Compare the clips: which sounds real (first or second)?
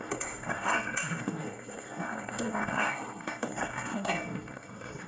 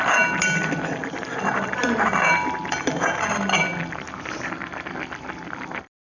second